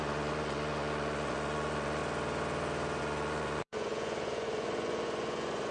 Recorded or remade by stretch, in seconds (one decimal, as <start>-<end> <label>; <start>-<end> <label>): 0.0-2.0 remade; 2.0-3.0 recorded; 3.0-5.7 remade